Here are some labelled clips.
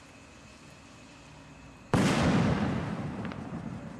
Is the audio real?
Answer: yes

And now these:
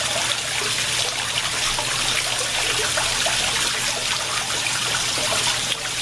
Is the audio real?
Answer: yes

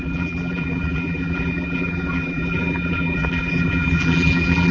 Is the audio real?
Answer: no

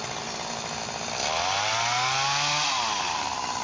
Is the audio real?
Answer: yes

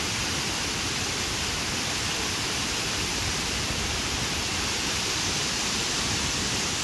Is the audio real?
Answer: no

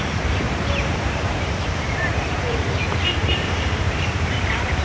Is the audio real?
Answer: no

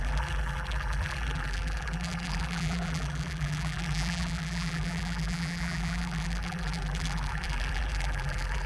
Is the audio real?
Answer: no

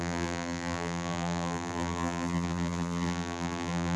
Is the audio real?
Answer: no